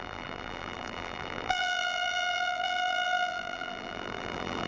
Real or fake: fake